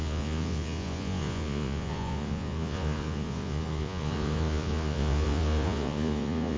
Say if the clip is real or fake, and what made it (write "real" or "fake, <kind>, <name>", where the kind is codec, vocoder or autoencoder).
fake, vocoder, Vocos